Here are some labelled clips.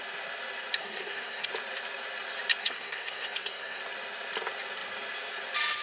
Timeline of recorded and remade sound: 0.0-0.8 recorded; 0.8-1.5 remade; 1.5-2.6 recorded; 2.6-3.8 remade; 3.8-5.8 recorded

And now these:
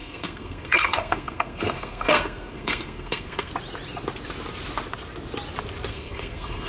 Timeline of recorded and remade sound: 0.0-3.5 remade; 3.5-5.9 recorded; 5.9-6.7 remade

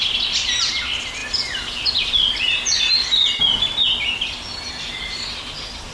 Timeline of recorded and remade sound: 0.0-5.9 recorded

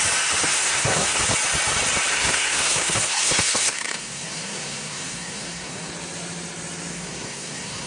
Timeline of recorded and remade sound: 0.0-0.5 recorded; 0.5-1.2 remade; 1.2-2.1 recorded; 2.1-5.9 remade; 5.9-6.9 recorded; 6.9-7.9 remade

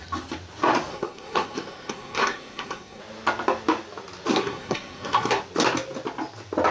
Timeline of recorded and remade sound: 0.0-0.9 recorded; 0.9-3.0 remade; 3.0-4.3 recorded; 4.3-5.4 remade; 5.4-6.7 recorded

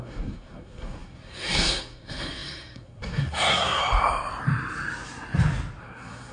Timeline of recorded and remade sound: 0.0-3.8 remade; 3.8-5.8 recorded; 5.8-6.3 remade